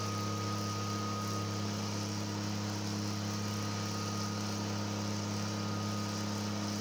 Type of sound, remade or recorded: recorded